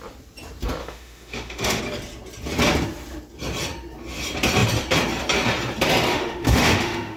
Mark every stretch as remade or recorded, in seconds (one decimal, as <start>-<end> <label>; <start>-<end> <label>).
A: 0.0-0.8 recorded; 0.8-1.8 remade; 1.8-6.1 recorded; 6.1-7.2 remade